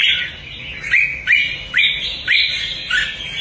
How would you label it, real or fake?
real